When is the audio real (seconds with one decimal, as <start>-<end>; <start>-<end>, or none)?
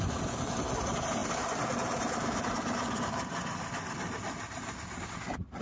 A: none